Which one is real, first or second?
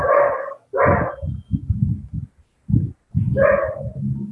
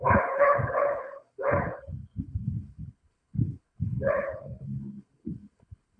first